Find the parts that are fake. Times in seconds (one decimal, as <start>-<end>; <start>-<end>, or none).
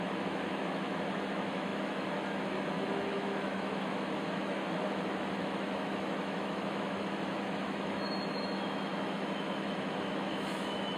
0.0-11.0